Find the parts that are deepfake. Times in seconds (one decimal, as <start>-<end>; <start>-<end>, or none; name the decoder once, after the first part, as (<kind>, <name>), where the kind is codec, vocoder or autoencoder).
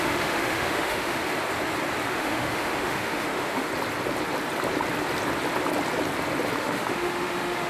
0.0-1.2 (autoencoder, DAC-VAE); 2.1-3.7; 6.6-7.7